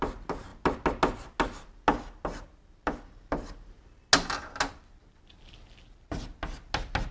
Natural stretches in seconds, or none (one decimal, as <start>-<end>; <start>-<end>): 0.0-7.1